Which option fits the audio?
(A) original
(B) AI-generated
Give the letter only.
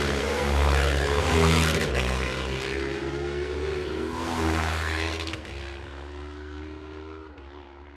B